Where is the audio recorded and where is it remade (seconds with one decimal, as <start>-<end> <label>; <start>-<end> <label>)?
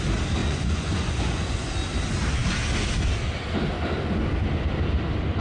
0.0-0.4 recorded; 0.4-1.7 remade; 1.7-5.4 recorded